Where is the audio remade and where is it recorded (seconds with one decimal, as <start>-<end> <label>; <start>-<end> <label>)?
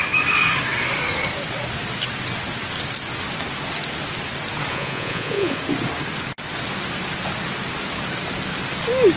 0.0-4.7 recorded; 4.7-5.6 remade; 5.6-9.2 recorded